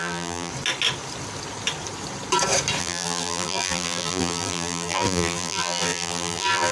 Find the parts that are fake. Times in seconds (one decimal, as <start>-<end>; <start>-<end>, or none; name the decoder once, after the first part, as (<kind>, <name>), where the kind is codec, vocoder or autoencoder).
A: 0.0-0.5 (vocoder, BigVGAN v2); 2.8-6.7